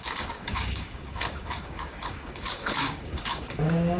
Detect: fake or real fake